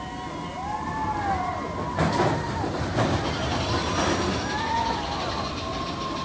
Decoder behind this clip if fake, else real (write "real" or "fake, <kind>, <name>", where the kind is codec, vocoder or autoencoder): real